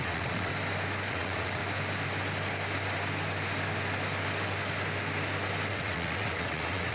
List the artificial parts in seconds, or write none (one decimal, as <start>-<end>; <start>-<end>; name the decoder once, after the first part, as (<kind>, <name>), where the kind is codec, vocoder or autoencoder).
0.0-0.5 (vocoder, WaveNeXt); 1.1-1.6; 5.7-6.9